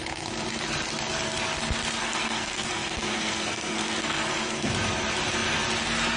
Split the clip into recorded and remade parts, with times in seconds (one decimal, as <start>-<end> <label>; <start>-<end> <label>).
0.0-2.0 recorded; 2.0-4.7 remade; 4.7-6.2 recorded